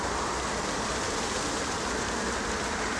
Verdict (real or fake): real